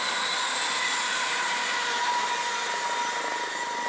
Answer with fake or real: real